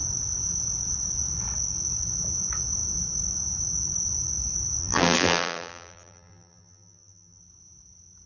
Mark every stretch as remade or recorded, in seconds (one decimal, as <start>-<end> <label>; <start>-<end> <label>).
0.0-4.8 recorded; 4.8-7.4 remade; 7.4-8.3 recorded